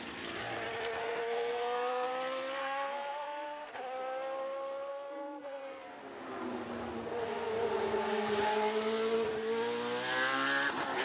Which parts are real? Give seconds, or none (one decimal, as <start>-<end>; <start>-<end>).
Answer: 0.0-1.0; 2.1-2.6; 3.7-4.9; 5.9-11.0